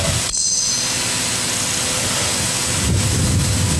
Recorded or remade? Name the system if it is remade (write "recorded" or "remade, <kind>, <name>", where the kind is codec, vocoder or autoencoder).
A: recorded